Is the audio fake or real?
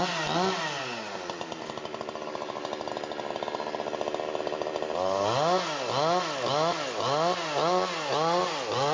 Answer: real